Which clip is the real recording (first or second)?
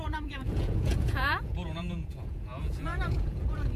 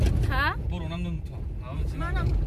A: second